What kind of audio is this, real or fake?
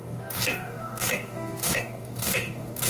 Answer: fake